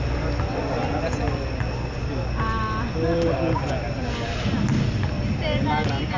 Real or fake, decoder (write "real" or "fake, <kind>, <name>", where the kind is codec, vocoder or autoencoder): real